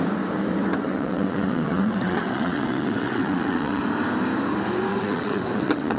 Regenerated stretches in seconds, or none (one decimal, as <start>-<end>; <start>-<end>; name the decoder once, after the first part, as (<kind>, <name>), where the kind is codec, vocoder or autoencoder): 0.8-3.8 (vocoder, WaveNeXt); 4.9-6.0